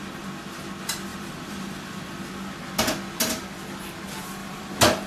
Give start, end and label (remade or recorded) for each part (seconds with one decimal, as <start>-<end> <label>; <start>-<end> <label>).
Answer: 0.0-1.1 recorded; 1.1-2.1 remade; 2.1-4.4 recorded; 4.4-5.1 remade